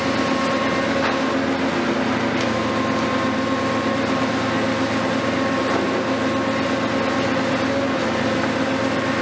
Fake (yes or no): no